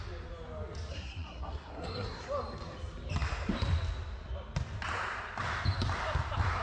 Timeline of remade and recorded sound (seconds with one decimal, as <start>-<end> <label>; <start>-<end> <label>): 0.0-0.9 recorded; 0.9-2.2 remade; 2.2-6.6 recorded